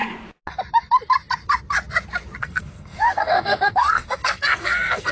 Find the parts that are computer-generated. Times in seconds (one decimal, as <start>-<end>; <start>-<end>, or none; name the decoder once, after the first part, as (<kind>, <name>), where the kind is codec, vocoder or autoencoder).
2.4-5.1 (codec, SNAC)

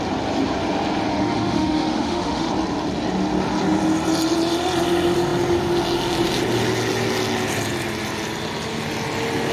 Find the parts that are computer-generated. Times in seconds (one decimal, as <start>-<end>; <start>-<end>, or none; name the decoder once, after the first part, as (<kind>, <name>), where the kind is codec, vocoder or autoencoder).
1.1-2.5 (autoencoder, DAC-VAE)

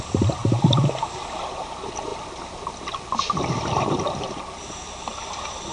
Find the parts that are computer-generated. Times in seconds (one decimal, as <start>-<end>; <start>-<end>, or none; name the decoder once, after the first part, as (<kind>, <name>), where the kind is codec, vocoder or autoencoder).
none

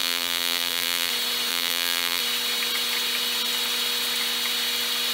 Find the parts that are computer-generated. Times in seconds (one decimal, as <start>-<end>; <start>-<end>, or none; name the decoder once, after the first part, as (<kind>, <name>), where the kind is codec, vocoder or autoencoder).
0.0-1.1 (vocoder, BigVGAN v2); 1.5-2.2

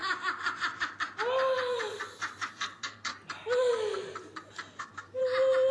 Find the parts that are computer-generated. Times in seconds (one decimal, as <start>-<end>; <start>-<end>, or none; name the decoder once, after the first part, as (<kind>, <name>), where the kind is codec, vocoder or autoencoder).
2.5-3.1 (codec, SNAC); 4.8-5.2

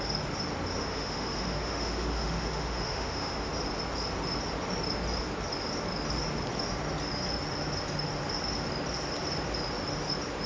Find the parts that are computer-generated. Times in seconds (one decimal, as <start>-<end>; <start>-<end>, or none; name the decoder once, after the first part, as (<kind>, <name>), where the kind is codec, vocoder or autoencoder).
0.8-3.5 (autoencoder, DAC-VAE)